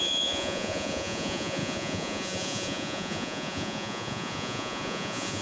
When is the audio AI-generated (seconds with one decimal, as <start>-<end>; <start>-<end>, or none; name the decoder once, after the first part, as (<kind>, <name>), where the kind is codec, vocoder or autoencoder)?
0.0-5.4 (vocoder, Vocos)